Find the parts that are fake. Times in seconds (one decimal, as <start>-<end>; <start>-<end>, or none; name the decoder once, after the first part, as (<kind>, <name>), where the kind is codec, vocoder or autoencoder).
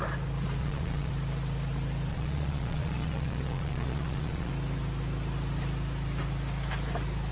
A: 0.6-1.1 (vocoder, Vocos); 2.1-4.5